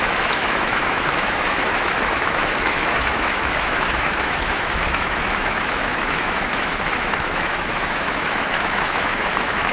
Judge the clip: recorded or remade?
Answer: remade